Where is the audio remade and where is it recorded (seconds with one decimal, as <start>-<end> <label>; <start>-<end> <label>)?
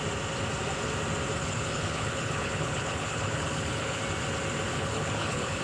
0.0-1.4 recorded; 1.4-4.0 remade; 4.0-4.7 recorded; 4.7-5.6 remade